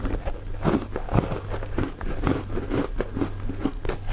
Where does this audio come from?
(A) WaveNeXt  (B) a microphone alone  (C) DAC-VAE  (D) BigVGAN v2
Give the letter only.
B